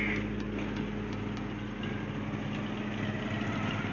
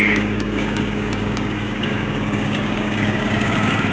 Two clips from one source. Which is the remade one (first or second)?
second